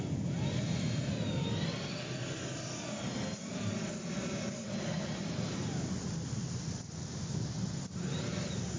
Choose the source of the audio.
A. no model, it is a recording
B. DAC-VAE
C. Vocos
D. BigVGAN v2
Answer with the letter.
A